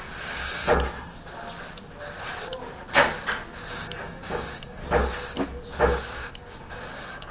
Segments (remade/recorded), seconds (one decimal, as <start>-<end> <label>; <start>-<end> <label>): 0.0-0.6 remade; 0.6-3.7 recorded; 3.7-4.8 remade; 4.8-5.8 recorded; 5.8-7.3 remade